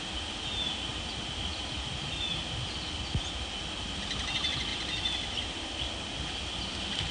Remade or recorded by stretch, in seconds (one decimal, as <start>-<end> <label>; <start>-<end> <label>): 0.0-0.9 recorded; 0.9-1.9 remade; 1.9-4.7 recorded; 4.7-5.9 remade; 5.9-7.1 recorded